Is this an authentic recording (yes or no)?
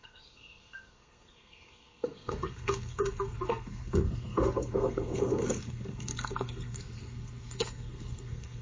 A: no